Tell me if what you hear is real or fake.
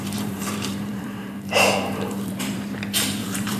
fake